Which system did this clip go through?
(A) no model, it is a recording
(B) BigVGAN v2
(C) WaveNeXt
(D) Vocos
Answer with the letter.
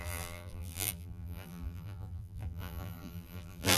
B